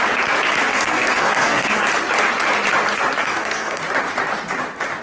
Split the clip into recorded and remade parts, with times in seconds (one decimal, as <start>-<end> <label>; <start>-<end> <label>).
0.0-0.7 recorded; 0.7-1.8 remade; 1.8-3.2 recorded; 3.2-3.8 remade; 3.8-5.0 recorded